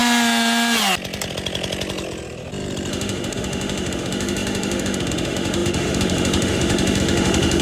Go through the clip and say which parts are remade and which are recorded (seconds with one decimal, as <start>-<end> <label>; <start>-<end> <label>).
0.0-2.9 recorded; 2.9-7.6 remade